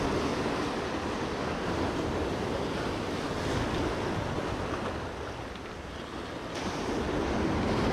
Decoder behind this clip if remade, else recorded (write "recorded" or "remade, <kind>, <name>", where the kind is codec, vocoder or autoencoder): recorded